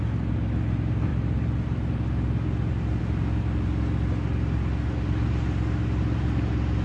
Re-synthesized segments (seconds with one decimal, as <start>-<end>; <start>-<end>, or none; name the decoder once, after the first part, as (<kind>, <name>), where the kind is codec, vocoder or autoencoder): none